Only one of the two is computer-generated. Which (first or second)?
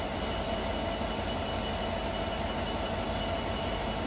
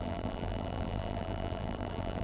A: second